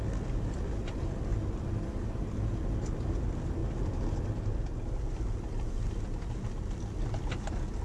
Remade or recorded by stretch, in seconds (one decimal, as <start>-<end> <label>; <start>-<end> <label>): 0.0-7.8 recorded